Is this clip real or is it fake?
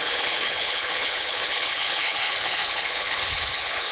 fake